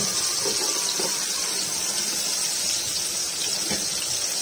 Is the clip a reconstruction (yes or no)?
no